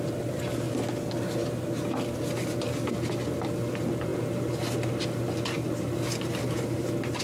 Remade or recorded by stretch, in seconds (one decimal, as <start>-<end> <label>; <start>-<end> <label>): 0.0-7.2 recorded